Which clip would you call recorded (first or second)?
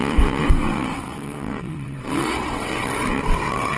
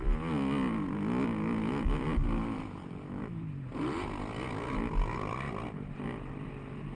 second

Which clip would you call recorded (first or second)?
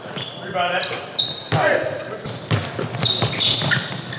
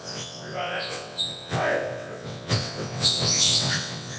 first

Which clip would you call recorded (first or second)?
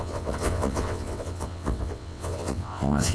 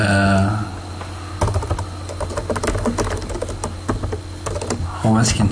second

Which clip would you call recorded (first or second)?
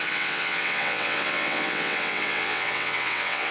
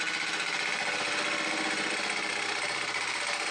second